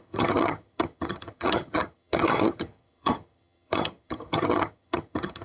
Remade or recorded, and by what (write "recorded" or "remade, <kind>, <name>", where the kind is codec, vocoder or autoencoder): remade, vocoder, HiFi-GAN